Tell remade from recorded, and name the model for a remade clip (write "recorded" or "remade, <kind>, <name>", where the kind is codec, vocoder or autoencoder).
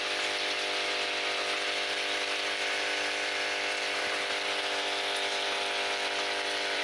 remade, vocoder, BigVGAN v2